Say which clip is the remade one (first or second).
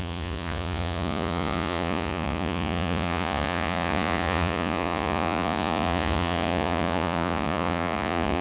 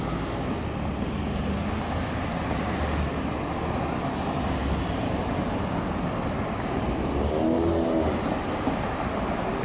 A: first